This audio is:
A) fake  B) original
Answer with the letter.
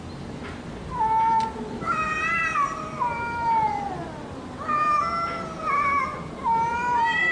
B